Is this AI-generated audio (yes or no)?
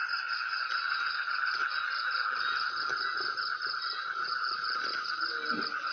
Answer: no